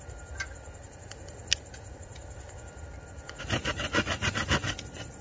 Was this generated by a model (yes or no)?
no